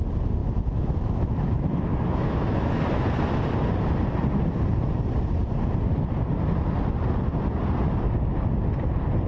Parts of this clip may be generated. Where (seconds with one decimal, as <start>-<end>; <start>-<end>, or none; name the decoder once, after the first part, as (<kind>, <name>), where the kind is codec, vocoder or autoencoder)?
0.4-2.8 (autoencoder, DAC-VAE)